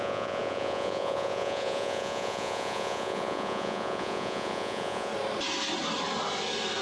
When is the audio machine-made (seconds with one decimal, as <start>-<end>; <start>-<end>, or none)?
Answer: 0.0-5.1